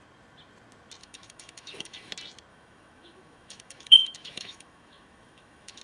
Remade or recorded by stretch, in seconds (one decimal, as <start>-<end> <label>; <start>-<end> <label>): 0.0-1.0 recorded; 1.0-2.1 remade; 2.1-2.5 recorded; 2.5-5.8 remade